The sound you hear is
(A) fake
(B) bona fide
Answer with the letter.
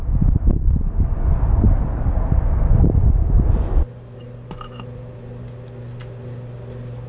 B